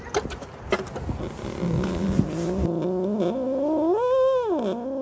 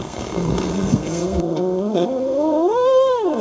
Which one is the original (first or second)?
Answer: first